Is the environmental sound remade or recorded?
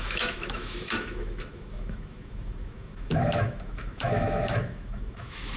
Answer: remade